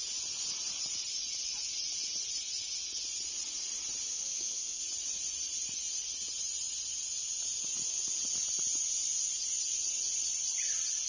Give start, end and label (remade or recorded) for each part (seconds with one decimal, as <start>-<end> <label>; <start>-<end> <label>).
0.0-4.1 recorded; 4.1-4.8 remade; 4.8-11.1 recorded